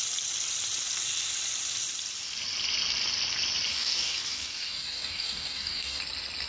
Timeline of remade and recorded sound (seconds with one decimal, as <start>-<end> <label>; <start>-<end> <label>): 0.0-3.7 recorded; 3.7-6.0 remade; 6.0-6.5 recorded